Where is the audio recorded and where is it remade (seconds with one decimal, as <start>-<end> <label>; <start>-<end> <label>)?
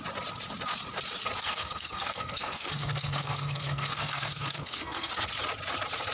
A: 0.0-1.4 recorded; 1.4-5.1 remade; 5.1-6.1 recorded